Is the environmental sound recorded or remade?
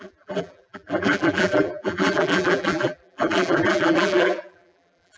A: remade